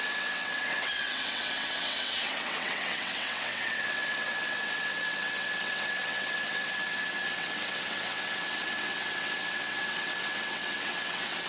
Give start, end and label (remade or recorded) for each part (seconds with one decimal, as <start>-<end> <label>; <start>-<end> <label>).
0.0-11.5 remade